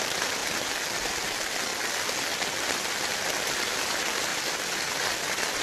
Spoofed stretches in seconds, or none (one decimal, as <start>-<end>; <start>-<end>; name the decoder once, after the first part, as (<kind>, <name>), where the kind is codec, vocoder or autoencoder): 0.0-0.4 (vocoder, BigVGAN v2); 1.0-1.7; 3.1-5.6